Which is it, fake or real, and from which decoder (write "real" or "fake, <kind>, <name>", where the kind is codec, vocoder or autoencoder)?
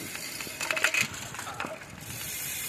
fake, vocoder, BigVGAN v2